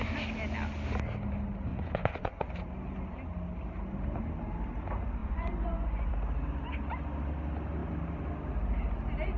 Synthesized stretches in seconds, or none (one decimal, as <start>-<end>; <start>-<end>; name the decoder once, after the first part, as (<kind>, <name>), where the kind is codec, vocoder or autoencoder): 1.7-2.5 (vocoder, Vocos); 5.2-6.1